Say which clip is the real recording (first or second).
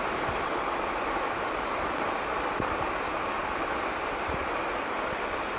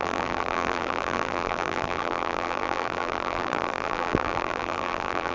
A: first